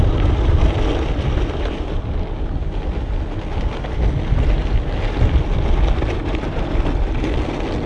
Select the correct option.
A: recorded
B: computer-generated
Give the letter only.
A